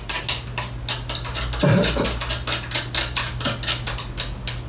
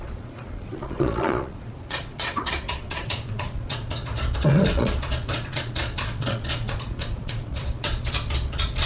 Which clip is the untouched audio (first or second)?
first